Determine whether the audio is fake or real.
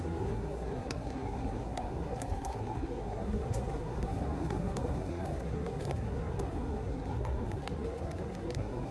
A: fake